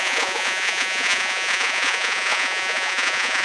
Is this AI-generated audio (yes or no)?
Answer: yes